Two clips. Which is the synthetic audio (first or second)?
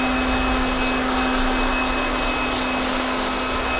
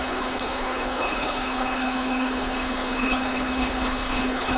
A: second